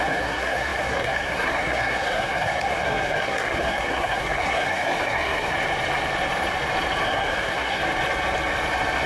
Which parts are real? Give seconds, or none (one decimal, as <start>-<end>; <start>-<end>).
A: 5.5-7.0; 7.8-9.1